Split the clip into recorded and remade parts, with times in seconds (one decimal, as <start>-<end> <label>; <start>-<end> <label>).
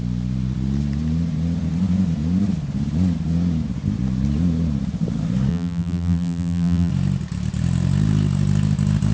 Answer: 0.0-5.5 recorded; 5.5-6.9 remade; 6.9-9.1 recorded